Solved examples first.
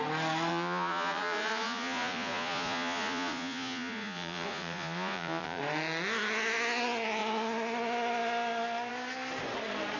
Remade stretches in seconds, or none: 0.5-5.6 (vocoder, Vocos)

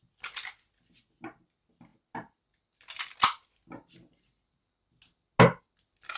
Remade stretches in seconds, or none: none

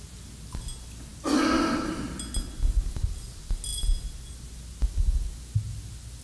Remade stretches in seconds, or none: none